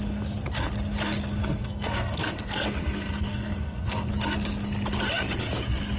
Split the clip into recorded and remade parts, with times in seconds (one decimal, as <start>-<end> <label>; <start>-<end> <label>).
0.0-1.4 recorded; 1.4-4.1 remade; 4.1-6.0 recorded